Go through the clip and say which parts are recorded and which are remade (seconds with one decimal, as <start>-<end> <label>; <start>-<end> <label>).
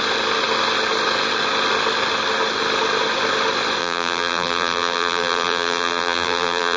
0.0-3.8 recorded; 3.8-6.8 remade